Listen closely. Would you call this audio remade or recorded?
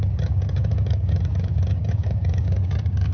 remade